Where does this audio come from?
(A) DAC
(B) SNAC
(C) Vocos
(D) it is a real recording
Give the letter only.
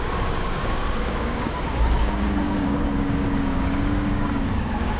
A